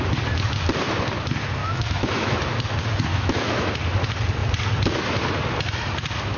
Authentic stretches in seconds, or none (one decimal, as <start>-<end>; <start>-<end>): 0.0-1.6; 2.4-3.1; 3.7-6.4